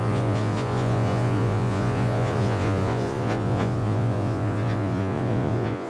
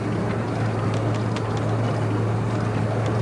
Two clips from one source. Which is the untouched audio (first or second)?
second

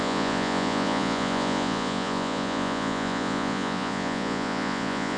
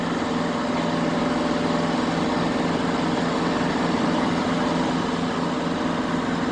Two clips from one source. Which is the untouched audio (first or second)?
second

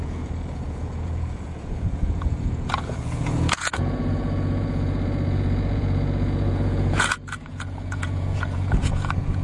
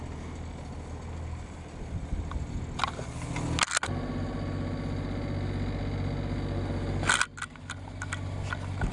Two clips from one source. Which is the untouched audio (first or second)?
second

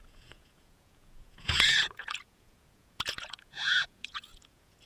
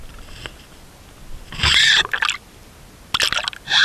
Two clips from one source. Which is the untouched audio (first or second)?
second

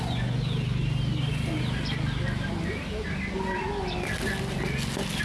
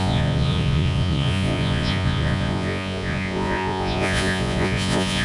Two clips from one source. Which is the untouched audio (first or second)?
first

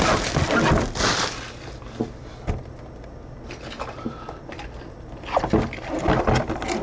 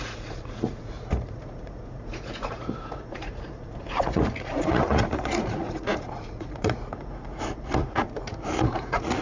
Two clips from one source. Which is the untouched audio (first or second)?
first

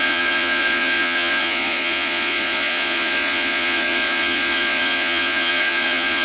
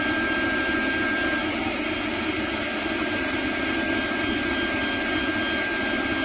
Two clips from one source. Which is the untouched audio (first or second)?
second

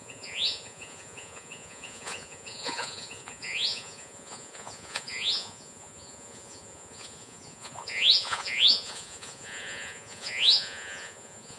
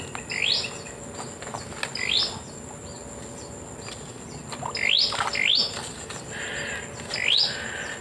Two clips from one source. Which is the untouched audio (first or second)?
second